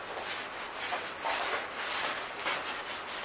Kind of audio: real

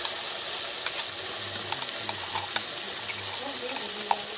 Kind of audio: real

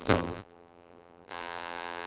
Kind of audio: fake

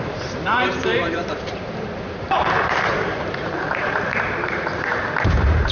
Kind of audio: fake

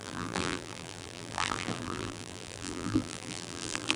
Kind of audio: fake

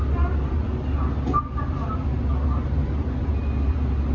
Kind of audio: real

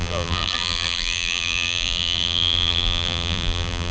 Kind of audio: fake